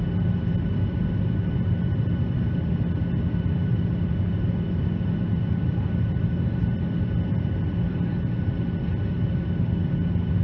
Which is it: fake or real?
real